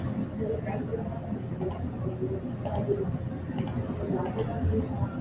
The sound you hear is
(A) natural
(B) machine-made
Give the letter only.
A